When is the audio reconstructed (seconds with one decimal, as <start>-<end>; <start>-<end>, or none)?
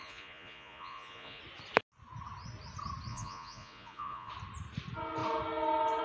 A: 0.0-1.4; 3.1-4.3